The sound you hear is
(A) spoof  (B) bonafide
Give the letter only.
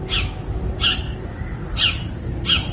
B